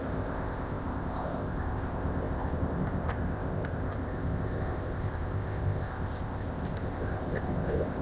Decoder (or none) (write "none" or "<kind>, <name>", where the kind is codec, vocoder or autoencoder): codec, ZipCodec